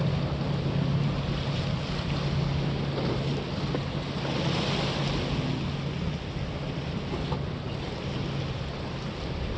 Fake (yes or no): no